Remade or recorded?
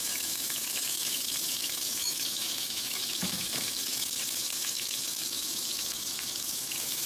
remade